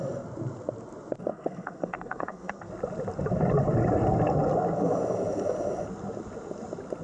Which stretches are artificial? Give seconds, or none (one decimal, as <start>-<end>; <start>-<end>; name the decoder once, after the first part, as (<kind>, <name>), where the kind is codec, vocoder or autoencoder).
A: 1.3-2.7 (codec, SNAC)